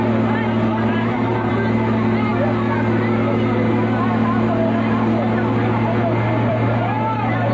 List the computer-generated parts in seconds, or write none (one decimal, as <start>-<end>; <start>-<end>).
0.7-1.5